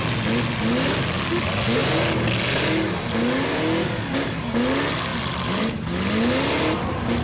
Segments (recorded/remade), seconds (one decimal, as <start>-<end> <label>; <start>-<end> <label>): 0.0-7.2 recorded